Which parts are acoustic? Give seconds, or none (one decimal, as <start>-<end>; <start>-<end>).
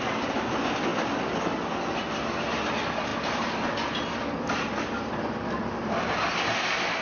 0.0-3.1; 3.7-7.0